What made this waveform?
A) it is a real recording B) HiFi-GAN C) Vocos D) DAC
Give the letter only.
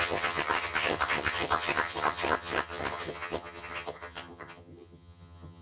B